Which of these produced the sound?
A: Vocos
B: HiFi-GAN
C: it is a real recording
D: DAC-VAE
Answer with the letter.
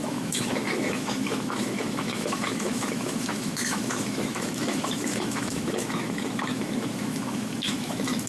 D